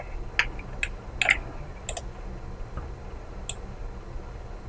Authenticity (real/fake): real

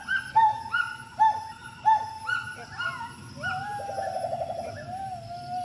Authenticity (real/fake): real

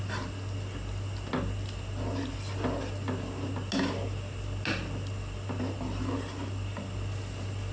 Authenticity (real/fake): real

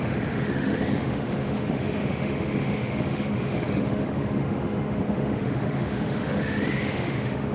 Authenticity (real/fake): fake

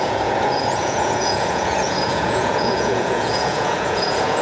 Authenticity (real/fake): fake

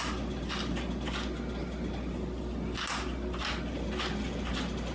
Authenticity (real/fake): real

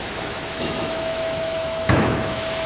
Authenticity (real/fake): fake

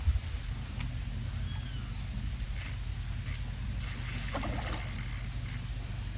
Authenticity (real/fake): real